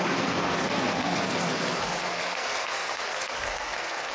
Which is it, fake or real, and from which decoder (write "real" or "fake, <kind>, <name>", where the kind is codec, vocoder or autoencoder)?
fake, codec, SNAC